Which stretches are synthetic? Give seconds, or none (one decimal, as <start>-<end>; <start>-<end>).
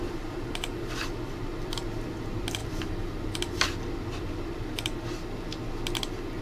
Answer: none